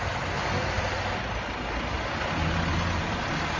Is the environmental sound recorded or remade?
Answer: recorded